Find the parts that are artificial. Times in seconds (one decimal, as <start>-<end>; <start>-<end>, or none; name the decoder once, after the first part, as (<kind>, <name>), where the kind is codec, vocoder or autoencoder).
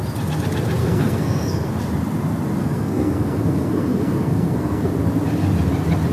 0.8-1.7 (codec, SNAC); 2.6-4.9